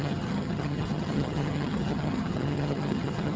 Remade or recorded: remade